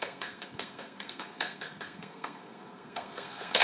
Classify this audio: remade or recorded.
remade